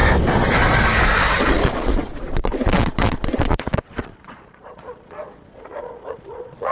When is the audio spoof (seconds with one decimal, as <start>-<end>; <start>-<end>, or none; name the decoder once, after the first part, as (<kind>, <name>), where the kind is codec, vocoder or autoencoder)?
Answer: 1.4-6.7 (vocoder, Vocos)